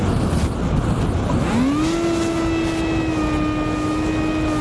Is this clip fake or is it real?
real